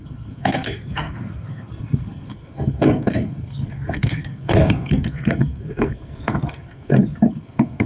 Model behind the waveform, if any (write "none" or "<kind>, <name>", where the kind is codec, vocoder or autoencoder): codec, SNAC